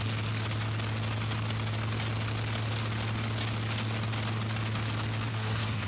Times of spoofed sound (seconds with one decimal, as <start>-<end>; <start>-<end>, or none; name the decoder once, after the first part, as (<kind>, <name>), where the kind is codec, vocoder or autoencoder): 5.3-5.9 (codec, SNAC)